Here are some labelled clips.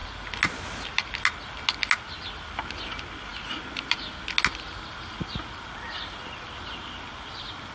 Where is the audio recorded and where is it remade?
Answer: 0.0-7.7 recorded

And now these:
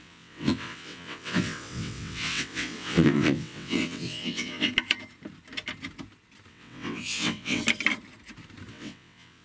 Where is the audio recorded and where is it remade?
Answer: 0.0-4.7 remade; 4.7-6.5 recorded; 6.5-7.6 remade; 7.6-8.7 recorded; 8.7-9.4 remade

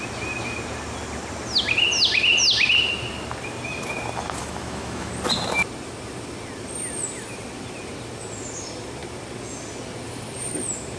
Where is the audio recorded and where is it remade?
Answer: 0.0-4.4 recorded; 4.4-5.1 remade; 5.1-11.0 recorded

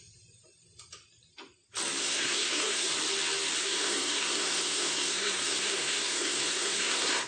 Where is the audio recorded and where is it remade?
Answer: 0.0-2.0 recorded; 2.0-2.9 remade; 2.9-3.6 recorded; 3.6-7.3 remade

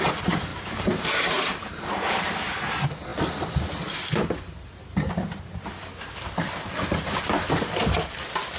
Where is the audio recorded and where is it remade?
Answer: 0.0-0.5 recorded; 0.5-2.2 remade; 2.2-8.6 recorded